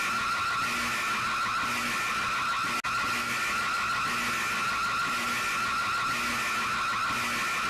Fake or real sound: real